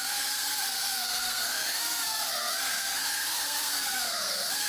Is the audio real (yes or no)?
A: no